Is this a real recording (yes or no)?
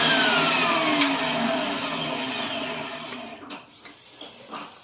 yes